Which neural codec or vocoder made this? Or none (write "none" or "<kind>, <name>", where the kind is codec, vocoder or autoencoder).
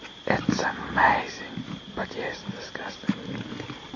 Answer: none